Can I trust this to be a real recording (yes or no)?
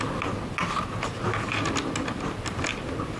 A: yes